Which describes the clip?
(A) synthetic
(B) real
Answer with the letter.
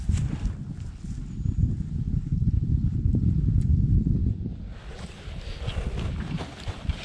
B